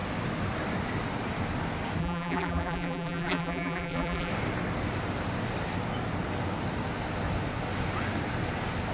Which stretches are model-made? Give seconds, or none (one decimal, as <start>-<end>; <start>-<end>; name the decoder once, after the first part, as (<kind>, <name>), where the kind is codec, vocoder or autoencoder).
2.0-4.3 (vocoder, BigVGAN v2)